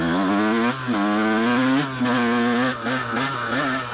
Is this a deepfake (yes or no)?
no